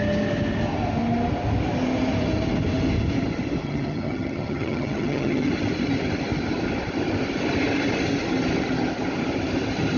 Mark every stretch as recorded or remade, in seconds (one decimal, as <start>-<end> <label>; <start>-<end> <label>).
0.0-3.6 recorded; 3.6-5.5 remade; 5.5-10.0 recorded